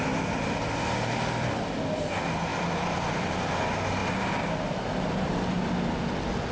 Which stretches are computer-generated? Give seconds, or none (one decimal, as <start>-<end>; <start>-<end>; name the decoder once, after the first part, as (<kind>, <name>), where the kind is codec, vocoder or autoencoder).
none